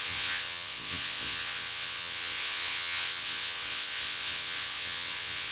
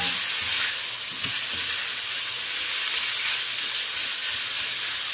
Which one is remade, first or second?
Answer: first